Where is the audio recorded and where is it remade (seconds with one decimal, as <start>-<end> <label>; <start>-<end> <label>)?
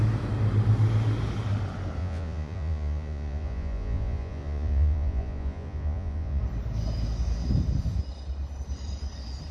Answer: 0.0-2.0 recorded; 2.0-6.4 remade; 6.4-9.5 recorded